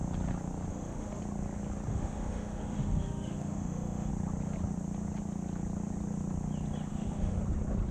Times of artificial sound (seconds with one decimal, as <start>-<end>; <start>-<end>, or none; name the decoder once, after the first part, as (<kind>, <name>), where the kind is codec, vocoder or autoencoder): 0.7-1.2 (autoencoder, DAC-VAE); 1.9-4.1; 6.9-7.4